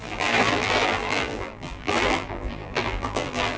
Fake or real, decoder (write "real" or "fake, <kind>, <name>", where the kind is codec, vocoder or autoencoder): fake, vocoder, BigVGAN v2